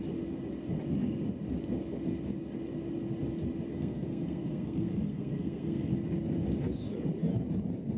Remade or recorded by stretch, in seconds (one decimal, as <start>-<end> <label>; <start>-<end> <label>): 0.0-3.7 recorded; 3.7-5.9 remade; 5.9-8.0 recorded